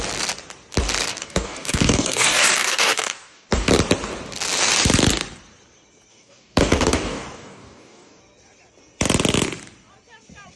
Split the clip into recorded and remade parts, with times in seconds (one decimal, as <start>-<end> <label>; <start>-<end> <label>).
0.0-1.1 recorded; 1.1-3.7 remade; 3.7-6.1 recorded; 6.1-8.2 remade; 8.2-10.6 recorded